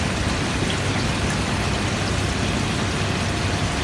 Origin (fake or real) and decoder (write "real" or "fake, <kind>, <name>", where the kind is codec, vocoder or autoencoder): real